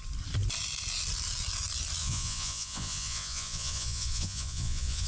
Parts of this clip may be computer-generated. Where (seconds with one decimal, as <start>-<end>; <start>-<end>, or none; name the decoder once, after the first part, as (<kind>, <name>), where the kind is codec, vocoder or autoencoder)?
2.0-5.1 (vocoder, Vocos)